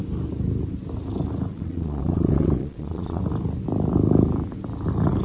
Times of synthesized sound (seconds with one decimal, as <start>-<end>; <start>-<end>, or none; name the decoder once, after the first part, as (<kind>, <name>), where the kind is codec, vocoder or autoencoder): 1.5-3.2 (vocoder, Vocos)